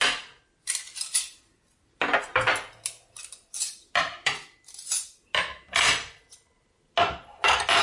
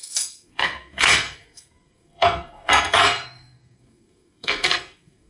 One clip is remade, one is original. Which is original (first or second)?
first